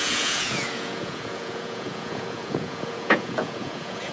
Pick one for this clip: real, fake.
fake